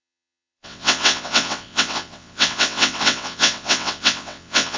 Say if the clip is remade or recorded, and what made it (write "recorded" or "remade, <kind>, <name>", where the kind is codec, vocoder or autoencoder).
remade, vocoder, WaveNeXt